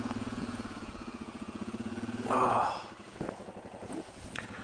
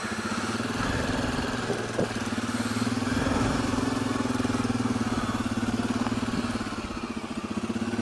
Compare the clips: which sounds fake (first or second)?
first